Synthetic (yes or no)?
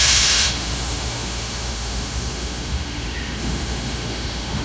yes